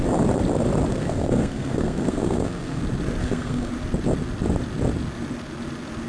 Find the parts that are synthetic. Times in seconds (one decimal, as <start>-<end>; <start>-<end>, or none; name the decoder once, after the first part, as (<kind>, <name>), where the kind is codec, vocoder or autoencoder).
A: 0.9-2.8 (codec, SNAC); 3.2-3.7

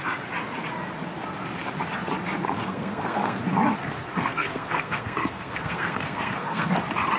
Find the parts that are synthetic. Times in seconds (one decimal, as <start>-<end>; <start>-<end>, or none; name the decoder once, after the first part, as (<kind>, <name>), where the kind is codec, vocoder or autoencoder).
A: 2.6-3.4 (codec, SNAC); 4.1-6.7

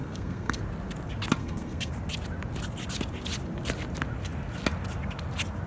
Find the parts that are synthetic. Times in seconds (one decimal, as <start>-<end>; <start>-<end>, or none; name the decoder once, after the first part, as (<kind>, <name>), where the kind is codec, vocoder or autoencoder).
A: 0.0-0.6 (codec, SNAC); 1.4-1.9

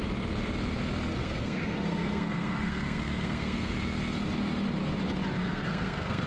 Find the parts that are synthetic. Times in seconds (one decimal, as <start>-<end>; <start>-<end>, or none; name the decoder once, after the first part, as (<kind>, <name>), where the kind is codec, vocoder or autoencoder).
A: 1.2-3.7 (codec, SNAC); 5.4-6.3

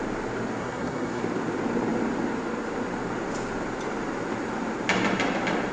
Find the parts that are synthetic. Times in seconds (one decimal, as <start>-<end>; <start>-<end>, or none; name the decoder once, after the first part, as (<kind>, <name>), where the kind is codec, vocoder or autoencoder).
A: 0.6-1.2 (codec, SNAC)

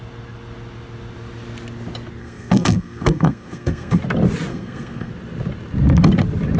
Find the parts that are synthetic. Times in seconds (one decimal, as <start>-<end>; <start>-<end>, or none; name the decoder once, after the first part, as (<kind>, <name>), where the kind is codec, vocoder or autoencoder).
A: 2.2-4.0 (codec, SNAC); 4.5-5.1

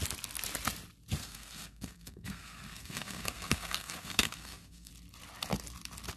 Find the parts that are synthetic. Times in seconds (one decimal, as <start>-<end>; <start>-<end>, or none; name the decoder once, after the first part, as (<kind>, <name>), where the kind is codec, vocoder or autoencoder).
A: 1.2-4.9 (codec, SNAC)